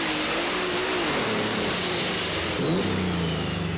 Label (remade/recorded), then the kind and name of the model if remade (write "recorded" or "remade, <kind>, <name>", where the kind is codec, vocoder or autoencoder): recorded